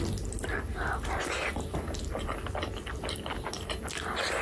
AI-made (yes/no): no